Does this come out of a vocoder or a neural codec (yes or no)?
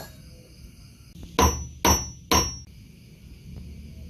no